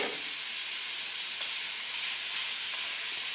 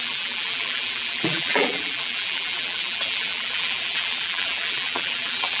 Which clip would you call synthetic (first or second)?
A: second